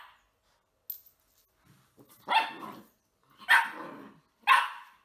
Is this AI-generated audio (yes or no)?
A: no